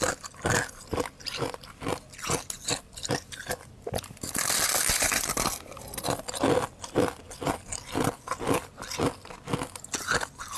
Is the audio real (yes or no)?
yes